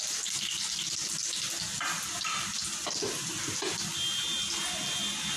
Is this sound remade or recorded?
recorded